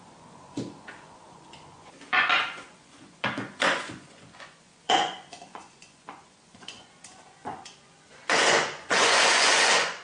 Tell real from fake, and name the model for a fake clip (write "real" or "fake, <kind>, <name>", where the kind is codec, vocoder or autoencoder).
fake, vocoder, Vocos